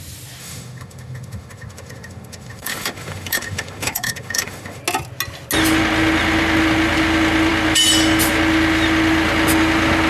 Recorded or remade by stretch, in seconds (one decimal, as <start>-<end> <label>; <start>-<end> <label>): 0.0-0.4 recorded; 0.4-4.8 remade; 4.8-10.1 recorded

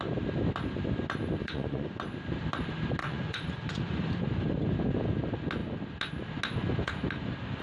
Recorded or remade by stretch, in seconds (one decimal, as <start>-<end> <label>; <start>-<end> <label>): 0.0-1.4 recorded; 1.4-2.0 remade; 2.0-3.0 recorded; 3.0-4.1 remade; 4.1-7.6 recorded